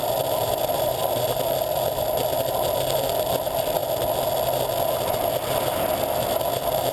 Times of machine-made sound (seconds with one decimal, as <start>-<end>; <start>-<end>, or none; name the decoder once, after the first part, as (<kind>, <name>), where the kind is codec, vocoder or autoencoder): 0.0-1.2 (vocoder, BigVGAN v2)